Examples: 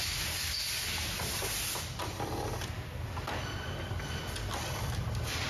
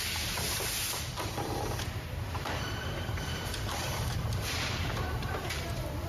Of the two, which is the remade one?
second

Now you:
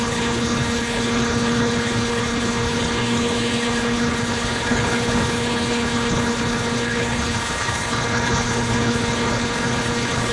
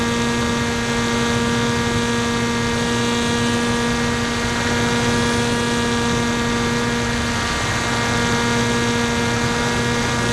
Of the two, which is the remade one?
first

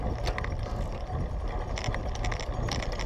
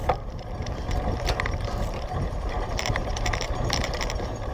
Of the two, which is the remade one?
second